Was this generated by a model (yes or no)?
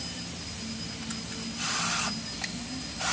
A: yes